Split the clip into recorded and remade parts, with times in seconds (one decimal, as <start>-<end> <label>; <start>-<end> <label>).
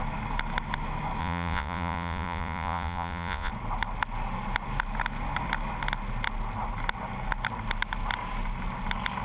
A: 0.0-1.2 recorded; 1.2-3.5 remade; 3.5-9.2 recorded